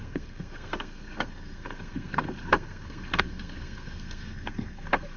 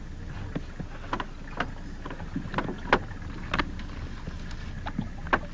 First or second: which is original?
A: second